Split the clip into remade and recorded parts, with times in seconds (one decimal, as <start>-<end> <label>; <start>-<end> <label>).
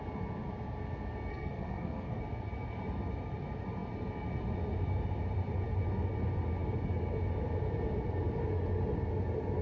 0.0-1.3 recorded; 1.3-2.2 remade; 2.2-9.6 recorded